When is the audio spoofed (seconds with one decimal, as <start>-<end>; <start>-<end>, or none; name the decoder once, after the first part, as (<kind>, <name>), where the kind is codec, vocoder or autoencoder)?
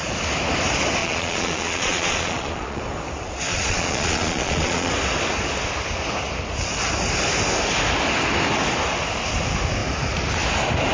1.0-2.8 (vocoder, Vocos); 3.5-4.9